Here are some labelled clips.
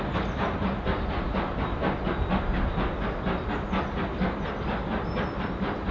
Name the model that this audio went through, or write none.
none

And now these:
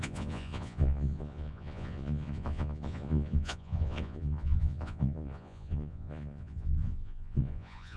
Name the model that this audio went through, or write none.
vocoder, Vocos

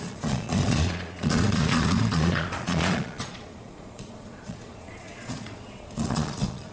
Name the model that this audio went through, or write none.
vocoder, Vocos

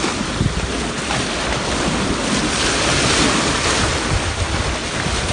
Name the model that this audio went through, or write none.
none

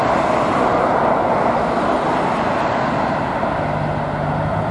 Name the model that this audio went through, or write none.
none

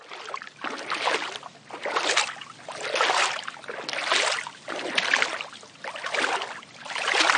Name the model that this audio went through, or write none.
none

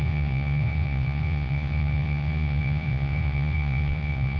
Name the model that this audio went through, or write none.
vocoder, Vocos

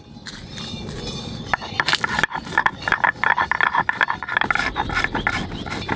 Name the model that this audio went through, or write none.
none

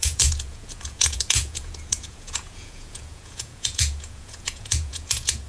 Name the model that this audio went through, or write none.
vocoder, Vocos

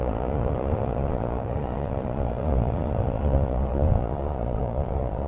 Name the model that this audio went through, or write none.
vocoder, Vocos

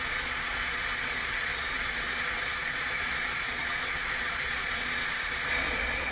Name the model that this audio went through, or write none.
vocoder, Vocos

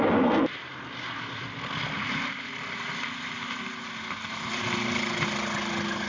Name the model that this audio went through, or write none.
none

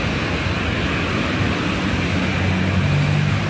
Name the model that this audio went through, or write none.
none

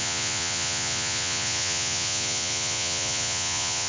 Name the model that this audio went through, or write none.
vocoder, Vocos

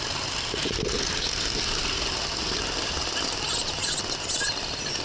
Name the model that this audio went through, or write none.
none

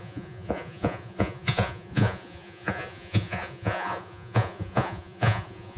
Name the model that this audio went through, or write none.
vocoder, Vocos